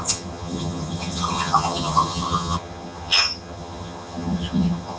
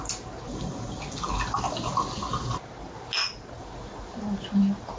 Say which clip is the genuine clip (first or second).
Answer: second